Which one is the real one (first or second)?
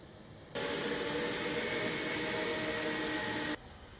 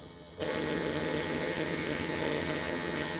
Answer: first